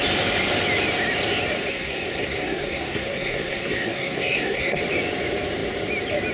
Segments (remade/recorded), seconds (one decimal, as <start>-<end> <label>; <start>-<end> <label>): 0.0-1.7 recorded; 1.7-4.8 remade; 4.8-6.3 recorded